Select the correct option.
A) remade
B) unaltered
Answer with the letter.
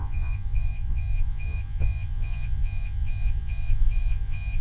A